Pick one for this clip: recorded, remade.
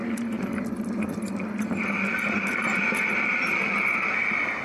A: recorded